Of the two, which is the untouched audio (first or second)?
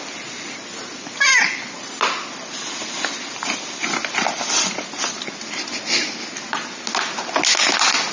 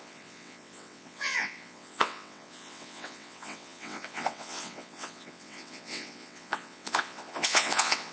first